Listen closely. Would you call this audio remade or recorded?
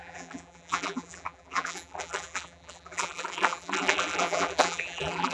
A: remade